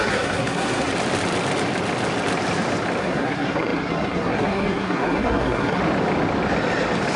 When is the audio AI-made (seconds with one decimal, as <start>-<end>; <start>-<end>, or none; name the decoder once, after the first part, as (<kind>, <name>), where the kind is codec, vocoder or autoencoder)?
0.0-0.9 (codec, SNAC); 3.0-5.8